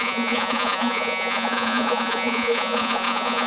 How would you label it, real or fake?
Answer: fake